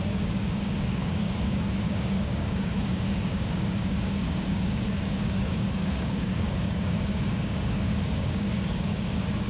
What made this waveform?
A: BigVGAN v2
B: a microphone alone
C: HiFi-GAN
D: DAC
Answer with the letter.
D